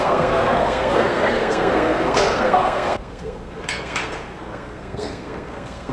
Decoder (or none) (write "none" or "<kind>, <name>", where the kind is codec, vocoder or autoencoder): codec, SNAC